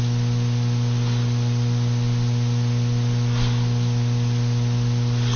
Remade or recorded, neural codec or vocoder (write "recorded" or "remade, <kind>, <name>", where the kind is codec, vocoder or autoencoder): recorded